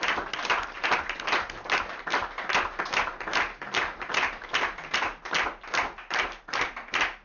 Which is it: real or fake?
real